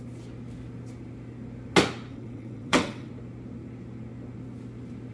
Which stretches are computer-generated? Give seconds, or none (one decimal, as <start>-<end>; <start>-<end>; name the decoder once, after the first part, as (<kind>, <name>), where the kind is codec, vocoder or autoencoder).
2.1-3.1 (vocoder, WaveNeXt)